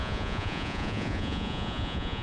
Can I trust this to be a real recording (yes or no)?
no